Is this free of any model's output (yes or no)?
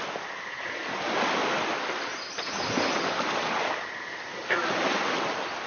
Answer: yes